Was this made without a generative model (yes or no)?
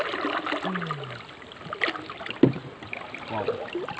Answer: yes